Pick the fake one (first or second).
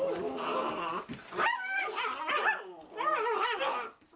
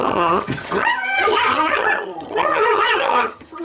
second